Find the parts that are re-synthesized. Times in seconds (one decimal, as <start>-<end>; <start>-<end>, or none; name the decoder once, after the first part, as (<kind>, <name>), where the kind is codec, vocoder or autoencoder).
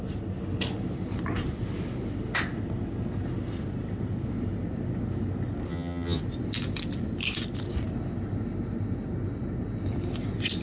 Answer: 5.7-6.2 (vocoder, HiFi-GAN)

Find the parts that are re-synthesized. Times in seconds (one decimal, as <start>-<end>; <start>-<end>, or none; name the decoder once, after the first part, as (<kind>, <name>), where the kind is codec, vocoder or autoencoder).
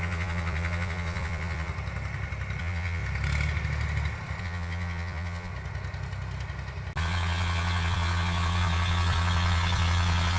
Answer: 0.0-1.7 (vocoder, Vocos); 2.6-3.0; 4.4-5.5; 7.0-10.4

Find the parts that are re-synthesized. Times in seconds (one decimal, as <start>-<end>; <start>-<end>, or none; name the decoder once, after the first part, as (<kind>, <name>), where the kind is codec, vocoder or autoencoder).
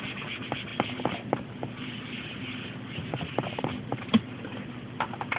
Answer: none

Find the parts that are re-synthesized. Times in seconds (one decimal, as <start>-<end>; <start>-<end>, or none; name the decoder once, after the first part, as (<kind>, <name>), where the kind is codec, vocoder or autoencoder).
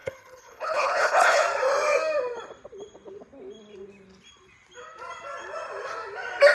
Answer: 0.0-1.4 (codec, HILCodec)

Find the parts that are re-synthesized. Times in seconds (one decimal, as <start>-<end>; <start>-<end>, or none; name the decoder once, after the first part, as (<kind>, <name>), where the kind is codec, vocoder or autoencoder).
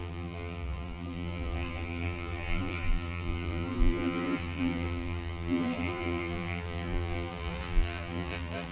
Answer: 0.0-8.7 (vocoder, BigVGAN v2)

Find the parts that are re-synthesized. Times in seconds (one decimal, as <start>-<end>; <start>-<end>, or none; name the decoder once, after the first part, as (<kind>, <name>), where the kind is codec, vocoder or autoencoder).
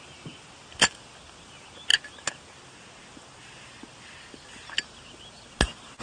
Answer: none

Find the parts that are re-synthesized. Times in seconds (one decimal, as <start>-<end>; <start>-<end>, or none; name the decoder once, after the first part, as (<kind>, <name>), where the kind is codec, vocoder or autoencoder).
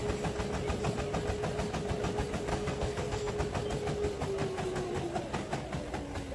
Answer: 2.5-3.3 (codec, SNAC)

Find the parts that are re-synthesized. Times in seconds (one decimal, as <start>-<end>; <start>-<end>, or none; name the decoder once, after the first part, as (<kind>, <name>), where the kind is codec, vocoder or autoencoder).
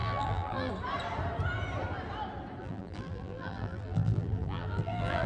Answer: 0.0-0.7 (vocoder, BigVGAN v2); 2.6-5.3